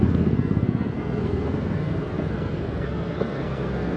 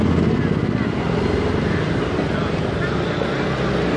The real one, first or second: second